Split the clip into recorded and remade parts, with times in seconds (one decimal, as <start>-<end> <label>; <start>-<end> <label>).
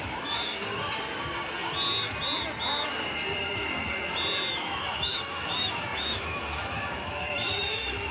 0.0-0.5 remade; 0.5-4.5 recorded; 4.5-8.1 remade